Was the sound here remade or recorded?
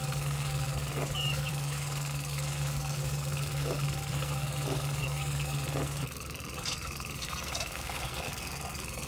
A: remade